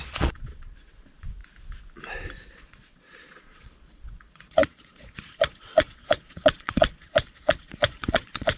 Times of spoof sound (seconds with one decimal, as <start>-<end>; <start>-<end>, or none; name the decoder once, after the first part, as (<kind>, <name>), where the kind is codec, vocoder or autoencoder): 0.0-1.4 (vocoder, Vocos); 2.5-8.6